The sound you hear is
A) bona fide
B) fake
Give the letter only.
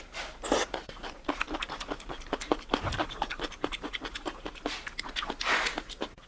A